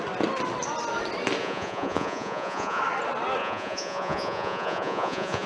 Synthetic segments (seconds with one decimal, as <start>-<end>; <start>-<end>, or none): 1.4-2.8; 3.4-5.5